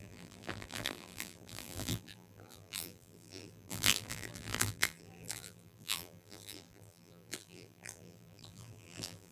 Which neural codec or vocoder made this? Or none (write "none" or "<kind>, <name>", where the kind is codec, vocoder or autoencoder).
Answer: vocoder, BigVGAN v2